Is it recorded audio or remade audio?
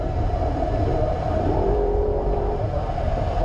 remade